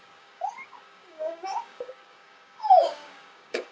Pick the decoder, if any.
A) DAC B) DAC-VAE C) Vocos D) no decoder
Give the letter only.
A